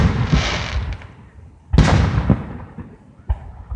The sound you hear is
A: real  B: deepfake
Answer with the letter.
A